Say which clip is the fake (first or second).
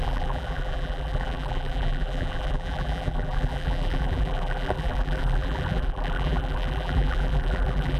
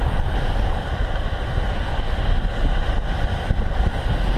first